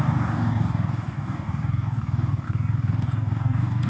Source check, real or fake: fake